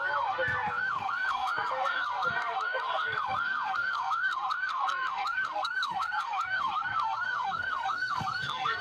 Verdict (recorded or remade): remade